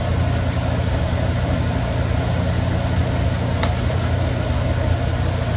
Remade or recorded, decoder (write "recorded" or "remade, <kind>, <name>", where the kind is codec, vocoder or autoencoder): recorded